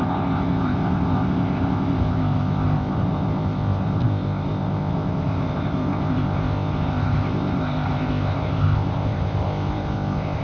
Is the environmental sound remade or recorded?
remade